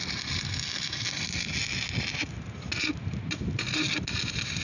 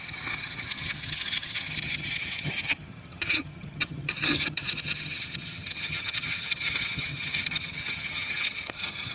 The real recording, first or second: first